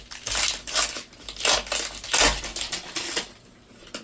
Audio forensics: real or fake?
real